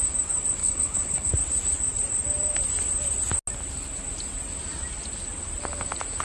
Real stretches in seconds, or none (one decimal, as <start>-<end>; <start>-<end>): 0.0-0.6; 1.3-6.2

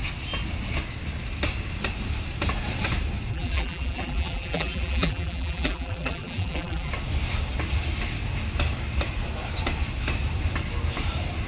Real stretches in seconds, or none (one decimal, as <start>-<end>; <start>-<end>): 0.0-3.3; 6.9-11.5

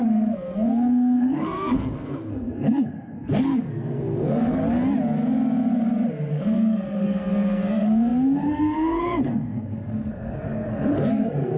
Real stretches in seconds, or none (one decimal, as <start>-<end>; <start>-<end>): 4.6-6.3

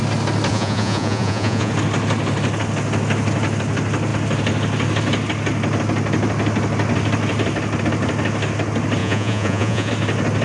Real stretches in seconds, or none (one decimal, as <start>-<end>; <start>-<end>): 0.0-0.5; 1.7-9.0; 9.9-10.4

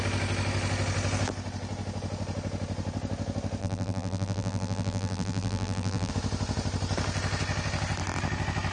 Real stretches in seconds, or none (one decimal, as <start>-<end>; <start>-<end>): 0.0-3.6; 6.1-8.7

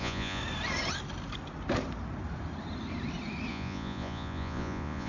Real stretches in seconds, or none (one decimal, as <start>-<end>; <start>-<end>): 0.4-3.5

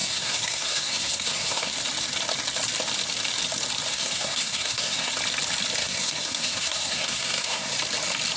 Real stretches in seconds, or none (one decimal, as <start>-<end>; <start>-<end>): 1.7-3.9; 5.1-5.8; 7.7-8.4